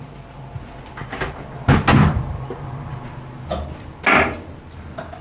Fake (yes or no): no